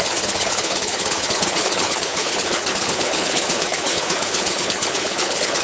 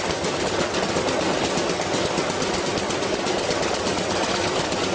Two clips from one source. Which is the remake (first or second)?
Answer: first